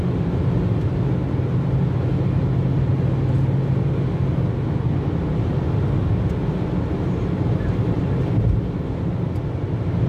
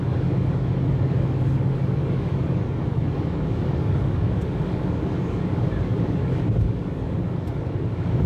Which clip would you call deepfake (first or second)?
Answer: second